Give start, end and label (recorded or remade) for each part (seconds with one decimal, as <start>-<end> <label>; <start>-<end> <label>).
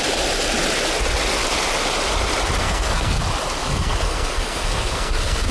0.0-2.6 recorded; 2.6-3.2 remade; 3.2-3.6 recorded; 3.6-5.5 remade